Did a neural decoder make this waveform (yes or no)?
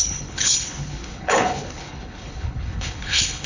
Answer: yes